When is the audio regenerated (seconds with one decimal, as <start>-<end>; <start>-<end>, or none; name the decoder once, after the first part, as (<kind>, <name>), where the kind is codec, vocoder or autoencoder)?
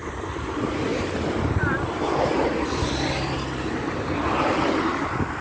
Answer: none